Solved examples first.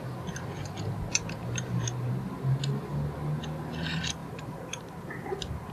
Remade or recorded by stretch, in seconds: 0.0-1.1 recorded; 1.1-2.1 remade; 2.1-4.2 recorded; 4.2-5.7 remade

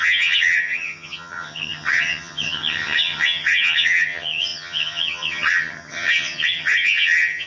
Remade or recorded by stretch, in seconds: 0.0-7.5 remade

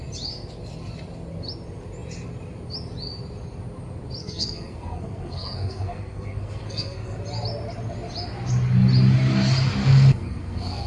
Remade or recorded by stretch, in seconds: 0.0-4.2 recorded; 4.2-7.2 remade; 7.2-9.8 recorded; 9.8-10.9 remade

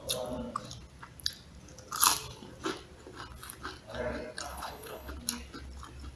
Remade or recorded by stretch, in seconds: 0.0-4.5 recorded; 4.5-5.1 remade; 5.1-6.2 recorded